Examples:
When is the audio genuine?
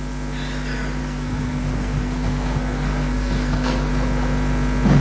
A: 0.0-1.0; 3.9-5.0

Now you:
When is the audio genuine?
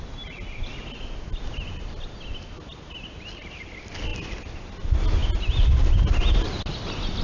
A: 0.0-7.2